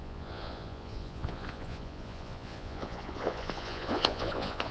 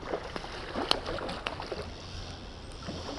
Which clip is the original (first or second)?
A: second